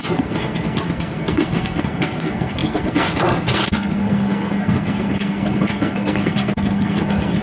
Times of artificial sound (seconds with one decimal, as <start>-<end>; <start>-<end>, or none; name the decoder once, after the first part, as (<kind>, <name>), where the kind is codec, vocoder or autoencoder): 0.0-7.4 (codec, SNAC)